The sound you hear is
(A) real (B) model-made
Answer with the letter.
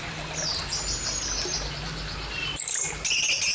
A